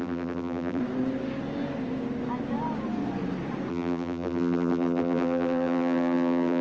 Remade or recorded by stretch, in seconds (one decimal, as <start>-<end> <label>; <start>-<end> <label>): 0.0-0.8 remade; 0.8-3.7 recorded; 3.7-6.6 remade